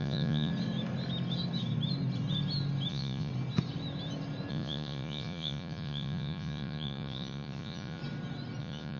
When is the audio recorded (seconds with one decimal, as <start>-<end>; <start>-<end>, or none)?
0.5-2.9; 3.3-4.5; 8.0-8.6